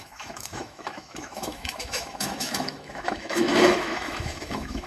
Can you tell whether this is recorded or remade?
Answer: remade